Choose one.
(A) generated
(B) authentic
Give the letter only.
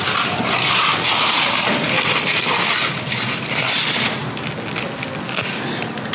B